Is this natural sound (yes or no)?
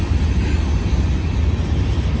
yes